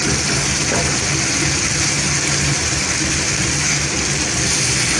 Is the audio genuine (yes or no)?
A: yes